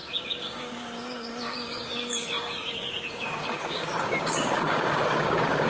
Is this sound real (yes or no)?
no